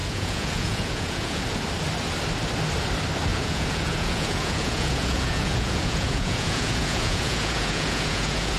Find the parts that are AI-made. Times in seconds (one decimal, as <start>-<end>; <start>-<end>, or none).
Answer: 0.0-1.4; 3.3-8.6